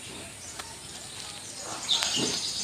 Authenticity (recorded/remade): recorded